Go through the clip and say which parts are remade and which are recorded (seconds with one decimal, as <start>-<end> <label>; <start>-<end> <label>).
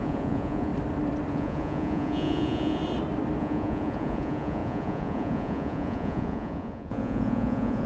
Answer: 0.0-0.7 remade; 0.7-1.3 recorded; 1.3-2.8 remade; 2.8-3.4 recorded; 3.4-7.9 remade